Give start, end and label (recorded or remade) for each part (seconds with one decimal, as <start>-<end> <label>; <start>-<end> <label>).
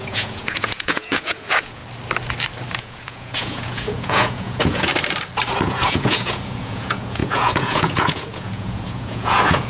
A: 0.0-1.8 remade; 1.8-2.8 recorded; 2.8-4.9 remade; 4.9-5.6 recorded; 5.6-9.7 remade